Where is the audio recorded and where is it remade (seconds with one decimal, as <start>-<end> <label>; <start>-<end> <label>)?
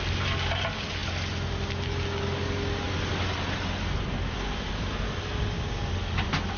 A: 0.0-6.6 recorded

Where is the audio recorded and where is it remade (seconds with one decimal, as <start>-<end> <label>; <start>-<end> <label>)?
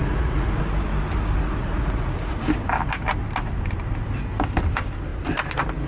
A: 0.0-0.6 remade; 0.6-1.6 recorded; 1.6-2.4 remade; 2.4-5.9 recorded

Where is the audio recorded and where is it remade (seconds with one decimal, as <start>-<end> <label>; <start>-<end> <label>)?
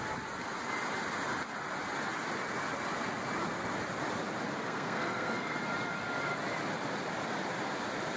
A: 0.0-4.6 recorded; 4.6-5.6 remade; 5.6-8.2 recorded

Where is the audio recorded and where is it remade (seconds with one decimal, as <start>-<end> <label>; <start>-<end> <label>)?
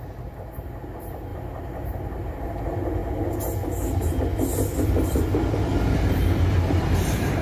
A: 0.0-1.3 recorded; 1.3-2.5 remade; 2.5-7.4 recorded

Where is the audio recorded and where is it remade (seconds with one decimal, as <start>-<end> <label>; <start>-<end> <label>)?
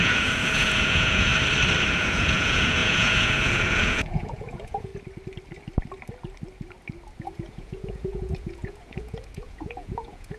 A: 0.0-1.3 remade; 1.3-1.9 recorded; 1.9-4.9 remade; 4.9-7.2 recorded; 7.2-10.4 remade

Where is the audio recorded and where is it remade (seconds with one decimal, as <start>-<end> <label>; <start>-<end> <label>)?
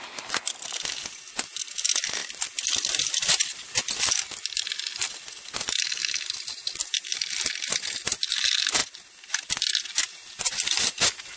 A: 0.0-11.4 recorded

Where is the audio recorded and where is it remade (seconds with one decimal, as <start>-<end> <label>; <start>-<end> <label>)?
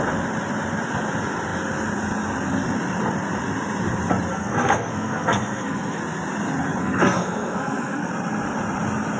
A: 0.0-4.3 recorded; 4.3-6.0 remade; 6.0-6.8 recorded; 6.8-8.1 remade; 8.1-9.2 recorded